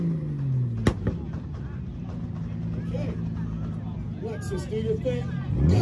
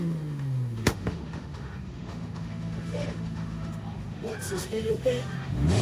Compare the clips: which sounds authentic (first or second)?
first